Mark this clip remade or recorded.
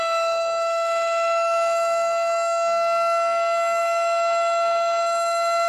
remade